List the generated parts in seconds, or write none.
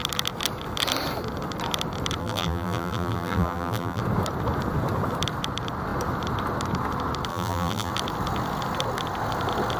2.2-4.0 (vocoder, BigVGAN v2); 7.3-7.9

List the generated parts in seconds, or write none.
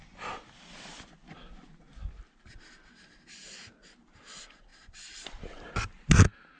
4.7-5.5 (vocoder, BigVGAN v2)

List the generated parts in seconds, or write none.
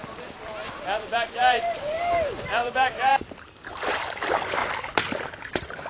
0.0-3.1 (vocoder, BigVGAN v2); 3.7-4.6; 5.2-5.9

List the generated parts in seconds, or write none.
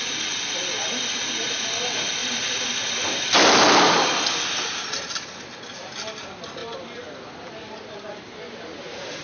2.2-2.9 (vocoder, BigVGAN v2); 6.6-9.2